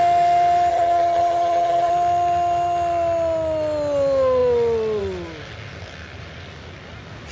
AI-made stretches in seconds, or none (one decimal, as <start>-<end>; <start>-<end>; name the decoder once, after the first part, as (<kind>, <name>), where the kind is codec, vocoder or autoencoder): 0.7-1.9 (vocoder, HiFi-GAN)